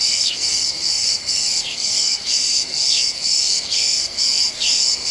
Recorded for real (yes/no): no